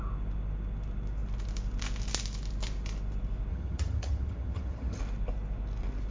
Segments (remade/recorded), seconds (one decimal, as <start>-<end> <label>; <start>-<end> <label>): 0.0-3.5 recorded; 3.5-5.0 remade; 5.0-6.1 recorded